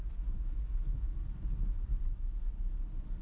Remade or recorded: recorded